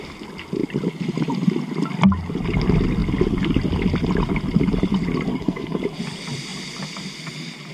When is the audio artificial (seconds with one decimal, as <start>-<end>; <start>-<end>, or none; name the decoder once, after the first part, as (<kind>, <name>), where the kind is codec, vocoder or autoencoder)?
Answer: 5.3-5.8 (codec, SNAC)